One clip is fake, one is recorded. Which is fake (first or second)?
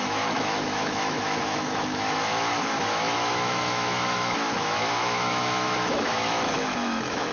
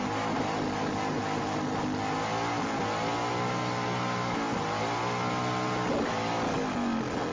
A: first